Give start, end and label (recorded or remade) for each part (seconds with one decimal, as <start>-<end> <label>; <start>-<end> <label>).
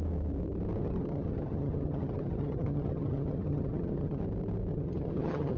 0.0-0.8 recorded; 0.8-4.2 remade; 4.2-4.7 recorded; 4.7-5.6 remade